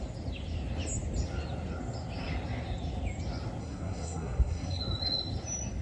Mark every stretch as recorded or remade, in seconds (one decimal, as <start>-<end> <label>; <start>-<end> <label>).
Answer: 0.0-3.6 recorded; 3.6-4.8 remade; 4.8-5.8 recorded